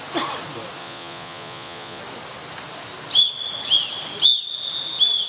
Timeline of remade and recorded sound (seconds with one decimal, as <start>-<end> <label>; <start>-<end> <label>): 0.0-0.8 recorded; 0.8-2.0 remade; 2.0-5.3 recorded